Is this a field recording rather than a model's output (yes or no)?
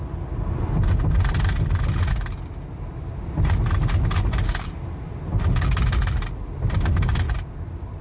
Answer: yes